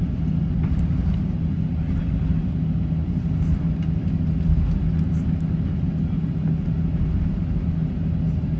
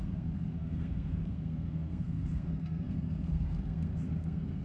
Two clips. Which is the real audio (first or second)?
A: first